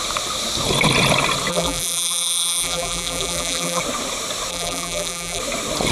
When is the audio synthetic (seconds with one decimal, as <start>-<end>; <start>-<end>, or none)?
1.5-3.8; 4.5-5.4